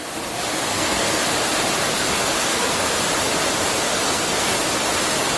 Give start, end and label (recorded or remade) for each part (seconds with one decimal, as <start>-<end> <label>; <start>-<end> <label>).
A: 0.0-0.7 recorded; 0.7-1.2 remade; 1.2-2.2 recorded; 2.2-2.9 remade; 2.9-3.9 recorded; 3.9-4.6 remade; 4.6-5.4 recorded